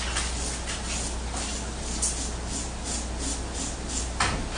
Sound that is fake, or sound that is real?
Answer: real